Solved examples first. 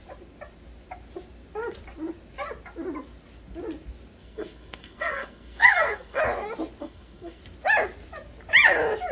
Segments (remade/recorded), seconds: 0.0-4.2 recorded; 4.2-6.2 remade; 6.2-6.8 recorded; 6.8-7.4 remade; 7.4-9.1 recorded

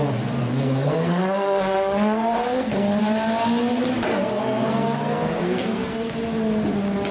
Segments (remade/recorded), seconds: 0.0-0.4 recorded; 0.4-3.0 remade; 3.0-4.1 recorded; 4.1-6.1 remade; 6.1-7.1 recorded

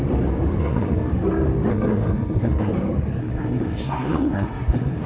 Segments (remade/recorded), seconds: 0.0-0.6 recorded; 0.6-1.1 remade; 1.1-1.7 recorded; 1.7-2.7 remade; 2.7-3.2 recorded; 3.2-5.1 remade

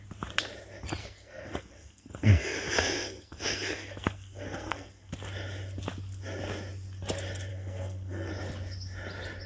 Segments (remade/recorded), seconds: 0.0-1.0 recorded; 1.0-5.1 remade; 5.1-7.5 recorded; 7.5-8.3 remade; 8.3-9.5 recorded